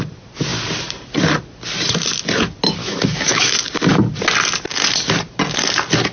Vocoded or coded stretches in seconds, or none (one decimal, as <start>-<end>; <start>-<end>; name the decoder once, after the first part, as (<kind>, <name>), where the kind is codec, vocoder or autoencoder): 2.8-3.5 (autoencoder, DAC-VAE)